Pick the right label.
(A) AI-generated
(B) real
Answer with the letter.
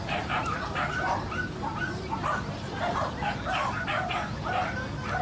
B